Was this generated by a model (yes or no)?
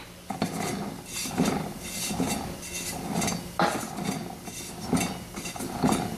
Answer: no